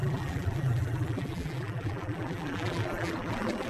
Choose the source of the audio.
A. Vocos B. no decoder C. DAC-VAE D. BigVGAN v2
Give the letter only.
D